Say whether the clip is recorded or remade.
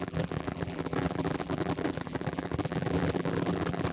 remade